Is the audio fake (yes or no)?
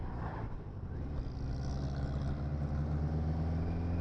no